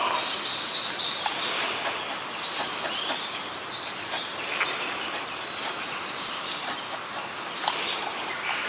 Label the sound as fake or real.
real